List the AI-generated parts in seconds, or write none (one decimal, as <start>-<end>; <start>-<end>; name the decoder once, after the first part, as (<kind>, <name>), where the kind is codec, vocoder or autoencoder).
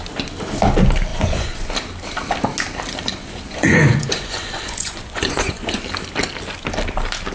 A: 1.1-1.7 (vocoder, Vocos); 3.2-5.8